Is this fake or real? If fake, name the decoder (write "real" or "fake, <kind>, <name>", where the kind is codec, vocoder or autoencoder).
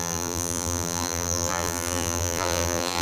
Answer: fake, vocoder, BigVGAN v2